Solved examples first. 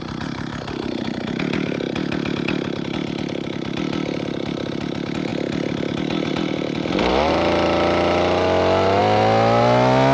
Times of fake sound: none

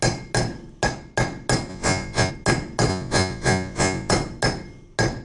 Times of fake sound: 1.7-2.3; 2.9-4.1

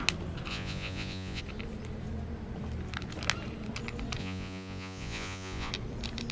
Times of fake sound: 0.5-1.4; 4.2-5.7

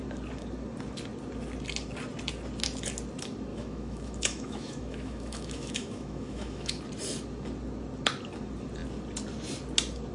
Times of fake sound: 3.5-6.8

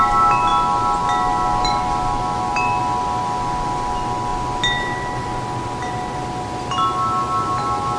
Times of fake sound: none

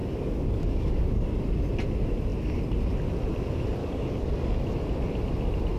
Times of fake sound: 0.0-1.4; 3.8-4.7

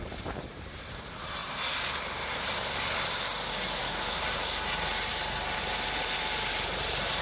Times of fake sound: 0.0-1.4; 3.8-7.2

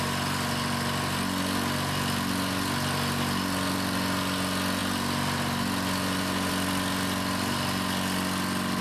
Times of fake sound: none